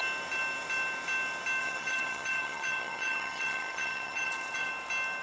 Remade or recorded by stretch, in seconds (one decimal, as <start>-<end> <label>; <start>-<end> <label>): 0.0-1.6 recorded; 1.6-4.7 remade; 4.7-5.2 recorded